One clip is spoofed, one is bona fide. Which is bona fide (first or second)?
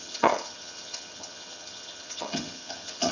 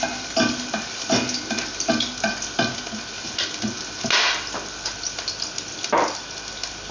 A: second